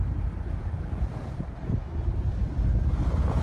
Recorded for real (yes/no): yes